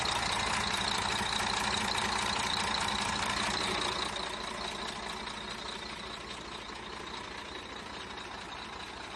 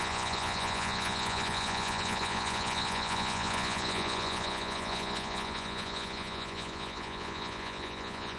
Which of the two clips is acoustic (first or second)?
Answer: first